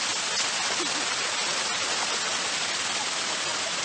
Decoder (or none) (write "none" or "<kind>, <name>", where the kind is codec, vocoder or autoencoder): none